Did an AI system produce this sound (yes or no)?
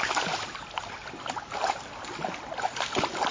no